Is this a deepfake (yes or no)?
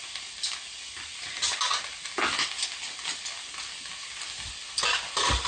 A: no